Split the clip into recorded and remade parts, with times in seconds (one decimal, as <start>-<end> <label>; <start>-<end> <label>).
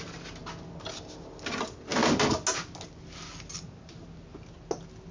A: 0.0-5.1 recorded